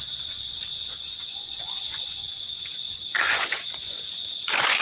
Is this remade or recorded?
remade